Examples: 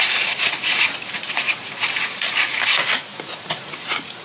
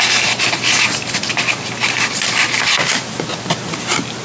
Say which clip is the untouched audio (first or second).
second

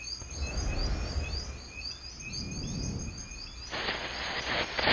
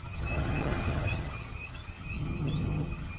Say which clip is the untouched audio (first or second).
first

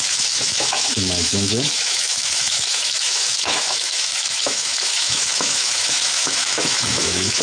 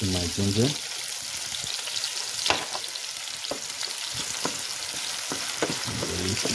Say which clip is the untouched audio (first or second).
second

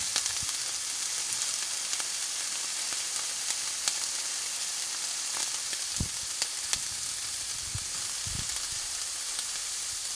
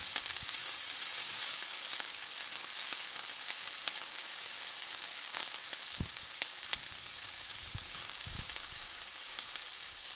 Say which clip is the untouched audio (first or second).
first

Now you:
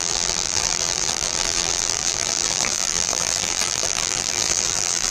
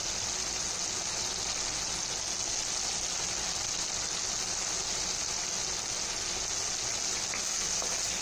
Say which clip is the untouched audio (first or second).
second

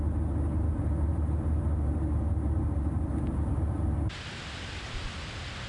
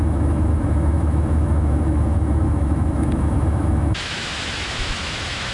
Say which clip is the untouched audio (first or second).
first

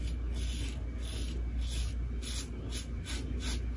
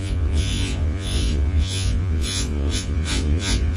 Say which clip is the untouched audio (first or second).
first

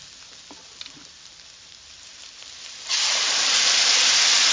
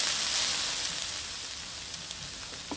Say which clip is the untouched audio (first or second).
second